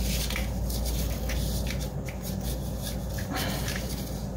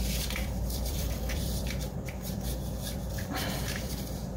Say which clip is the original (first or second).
first